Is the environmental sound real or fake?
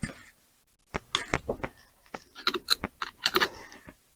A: real